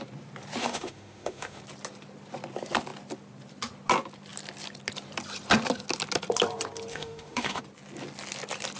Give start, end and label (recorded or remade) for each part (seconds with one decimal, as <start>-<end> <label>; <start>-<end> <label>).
0.0-0.6 recorded; 0.6-1.6 remade; 1.6-6.9 recorded; 6.9-7.6 remade; 7.6-8.8 recorded